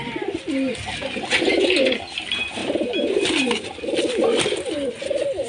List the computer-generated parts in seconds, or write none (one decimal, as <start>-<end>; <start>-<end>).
2.6-3.8